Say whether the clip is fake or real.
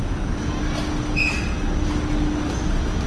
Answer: real